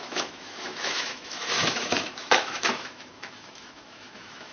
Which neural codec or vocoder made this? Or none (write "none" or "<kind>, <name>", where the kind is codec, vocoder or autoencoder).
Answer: autoencoder, DAC-VAE